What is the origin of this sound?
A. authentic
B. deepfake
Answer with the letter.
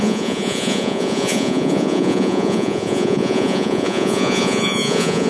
B